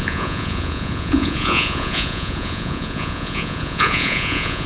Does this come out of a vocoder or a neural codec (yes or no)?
yes